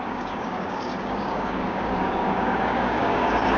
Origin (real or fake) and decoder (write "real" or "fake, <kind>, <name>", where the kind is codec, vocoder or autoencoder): fake, codec, DAC